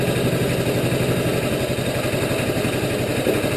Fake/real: real